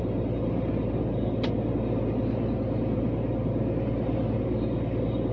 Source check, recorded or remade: recorded